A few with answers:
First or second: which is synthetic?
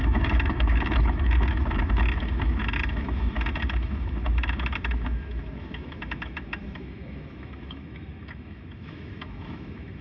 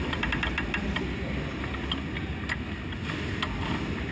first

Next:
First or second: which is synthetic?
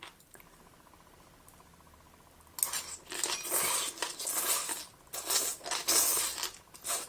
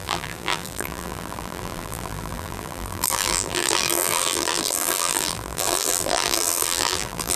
second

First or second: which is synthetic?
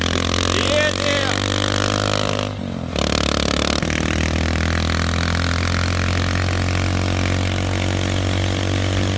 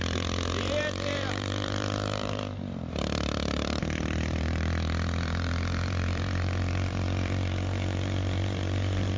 second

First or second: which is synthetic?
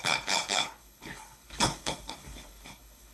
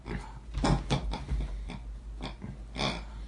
first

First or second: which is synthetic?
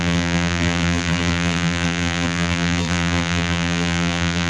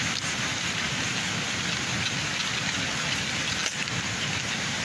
first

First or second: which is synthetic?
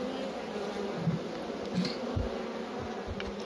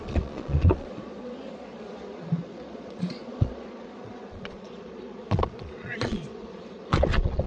second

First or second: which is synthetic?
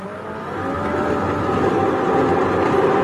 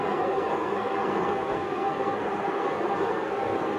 second